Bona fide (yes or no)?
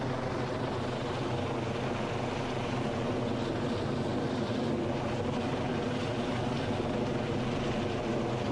yes